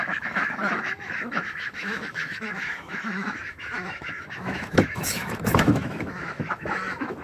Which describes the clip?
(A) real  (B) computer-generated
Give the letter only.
B